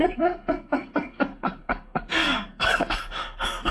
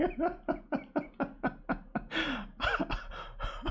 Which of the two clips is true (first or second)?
second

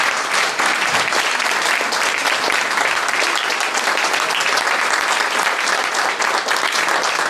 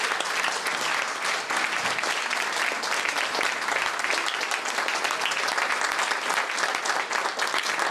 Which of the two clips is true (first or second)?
second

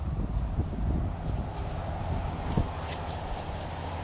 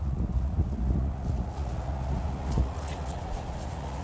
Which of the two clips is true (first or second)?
first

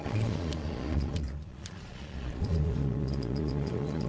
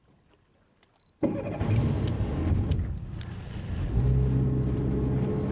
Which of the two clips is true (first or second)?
second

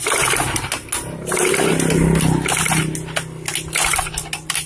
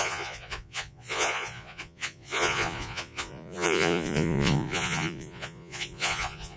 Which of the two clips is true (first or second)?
first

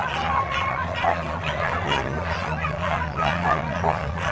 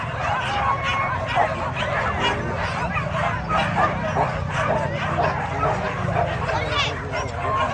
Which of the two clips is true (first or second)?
second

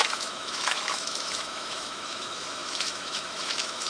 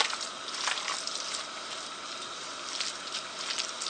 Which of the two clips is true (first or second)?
second